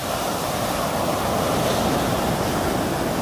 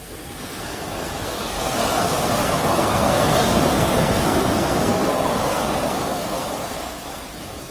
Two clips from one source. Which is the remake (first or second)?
second